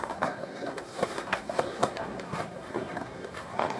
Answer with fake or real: fake